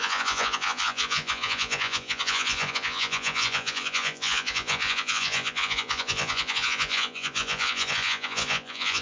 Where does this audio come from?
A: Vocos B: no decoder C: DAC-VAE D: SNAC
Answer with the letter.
A